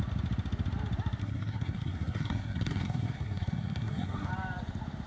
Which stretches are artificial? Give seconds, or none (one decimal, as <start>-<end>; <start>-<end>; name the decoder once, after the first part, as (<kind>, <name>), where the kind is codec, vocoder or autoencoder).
1.2-4.3 (codec, SNAC)